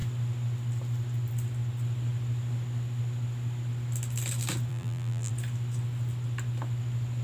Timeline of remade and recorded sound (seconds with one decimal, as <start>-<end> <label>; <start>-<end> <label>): 0.0-4.7 recorded; 4.7-5.3 remade; 5.3-7.2 recorded